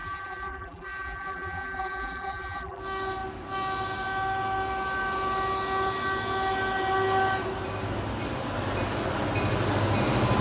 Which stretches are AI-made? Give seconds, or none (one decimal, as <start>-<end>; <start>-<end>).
0.0-2.8